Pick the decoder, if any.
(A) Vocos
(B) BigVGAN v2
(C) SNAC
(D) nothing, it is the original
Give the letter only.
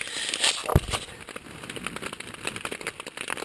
D